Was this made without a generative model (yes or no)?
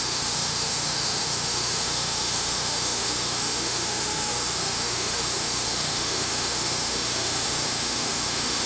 no